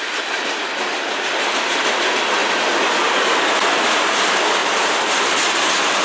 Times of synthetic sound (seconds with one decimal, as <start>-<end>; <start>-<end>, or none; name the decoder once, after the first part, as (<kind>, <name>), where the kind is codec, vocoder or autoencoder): 4.6-5.2 (vocoder, BigVGAN v2)